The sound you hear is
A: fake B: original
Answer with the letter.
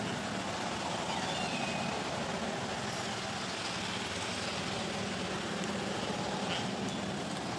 B